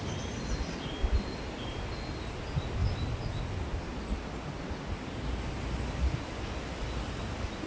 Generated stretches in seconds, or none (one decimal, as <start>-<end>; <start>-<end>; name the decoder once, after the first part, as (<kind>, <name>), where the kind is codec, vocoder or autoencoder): none